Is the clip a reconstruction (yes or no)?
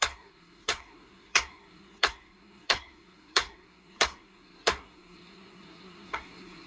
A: yes